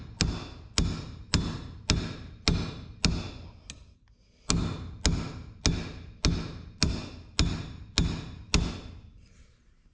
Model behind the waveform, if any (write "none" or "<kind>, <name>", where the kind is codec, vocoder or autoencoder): none